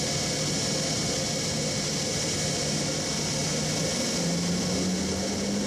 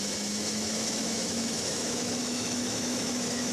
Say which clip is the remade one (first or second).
second